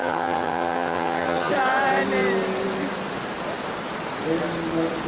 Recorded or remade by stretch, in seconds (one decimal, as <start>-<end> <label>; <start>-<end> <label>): 0.0-1.5 remade; 1.5-5.1 recorded